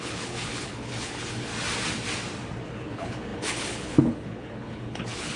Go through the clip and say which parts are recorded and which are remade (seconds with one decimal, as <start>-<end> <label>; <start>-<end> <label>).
0.0-1.5 remade; 1.5-2.7 recorded; 2.7-5.4 remade